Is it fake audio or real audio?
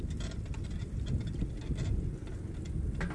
real